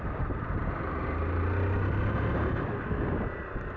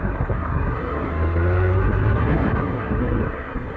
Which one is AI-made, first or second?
second